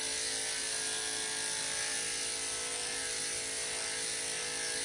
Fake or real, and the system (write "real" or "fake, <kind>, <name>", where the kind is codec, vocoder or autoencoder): real